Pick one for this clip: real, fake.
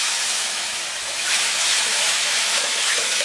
fake